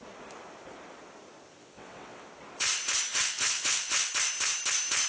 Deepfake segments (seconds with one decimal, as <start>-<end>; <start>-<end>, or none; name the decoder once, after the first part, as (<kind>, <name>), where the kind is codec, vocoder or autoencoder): 1.6-2.3 (vocoder, WaveNeXt); 3.1-4.1